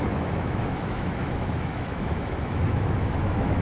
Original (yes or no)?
no